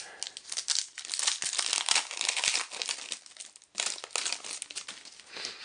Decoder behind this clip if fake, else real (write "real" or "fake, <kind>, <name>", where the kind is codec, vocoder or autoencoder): real